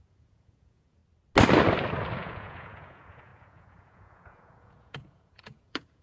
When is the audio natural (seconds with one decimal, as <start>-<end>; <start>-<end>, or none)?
1.0-2.2